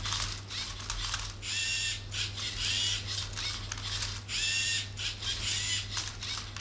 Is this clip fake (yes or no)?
no